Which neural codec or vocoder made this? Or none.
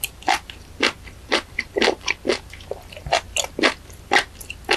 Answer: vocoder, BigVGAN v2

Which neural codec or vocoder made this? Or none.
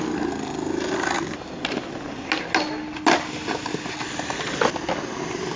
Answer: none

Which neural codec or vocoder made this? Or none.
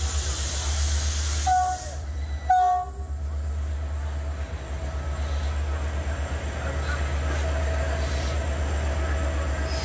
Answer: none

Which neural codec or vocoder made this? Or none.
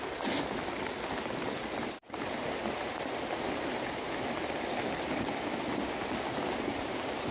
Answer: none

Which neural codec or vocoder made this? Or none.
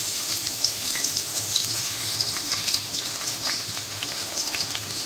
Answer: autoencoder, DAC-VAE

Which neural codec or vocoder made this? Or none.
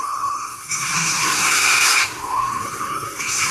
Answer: codec, SNAC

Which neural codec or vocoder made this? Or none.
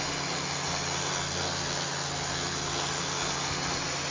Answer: none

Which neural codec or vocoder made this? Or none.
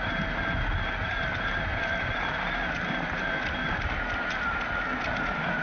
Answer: none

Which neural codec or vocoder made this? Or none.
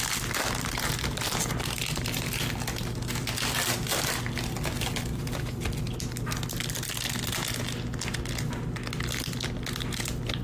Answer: none